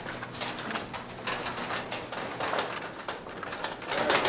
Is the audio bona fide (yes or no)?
yes